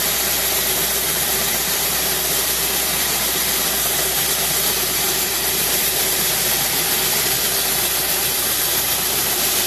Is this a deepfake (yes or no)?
yes